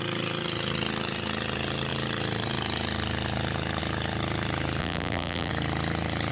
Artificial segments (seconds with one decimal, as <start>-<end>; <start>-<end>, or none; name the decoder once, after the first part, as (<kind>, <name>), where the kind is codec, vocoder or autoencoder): 4.8-5.5 (vocoder, BigVGAN v2)